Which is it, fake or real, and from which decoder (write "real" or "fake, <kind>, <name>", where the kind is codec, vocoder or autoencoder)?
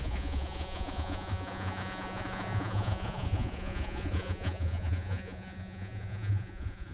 fake, vocoder, Vocos